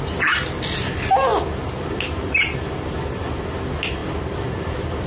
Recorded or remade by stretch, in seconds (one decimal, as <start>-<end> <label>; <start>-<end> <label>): 0.0-5.1 recorded